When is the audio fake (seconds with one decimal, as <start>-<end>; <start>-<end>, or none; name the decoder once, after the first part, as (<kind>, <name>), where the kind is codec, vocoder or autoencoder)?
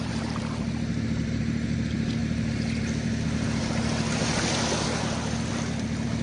none